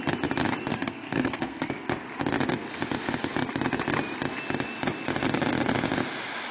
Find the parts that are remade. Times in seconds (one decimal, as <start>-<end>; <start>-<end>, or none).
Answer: 0.7-1.7